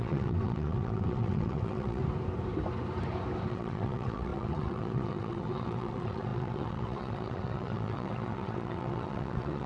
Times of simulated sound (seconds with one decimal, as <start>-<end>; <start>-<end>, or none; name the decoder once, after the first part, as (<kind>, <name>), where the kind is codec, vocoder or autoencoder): 0.0-2.0 (vocoder, WaveNeXt); 3.5-9.7